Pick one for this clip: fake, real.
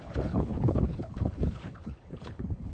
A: fake